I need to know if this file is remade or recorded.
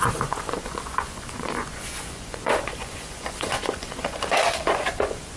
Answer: remade